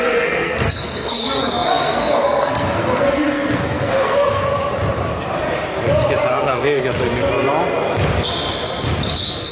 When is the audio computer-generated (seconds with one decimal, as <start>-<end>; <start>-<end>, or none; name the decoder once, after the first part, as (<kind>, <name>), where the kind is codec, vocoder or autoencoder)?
0.0-4.5 (codec, SNAC); 6.3-6.8; 9.1-9.5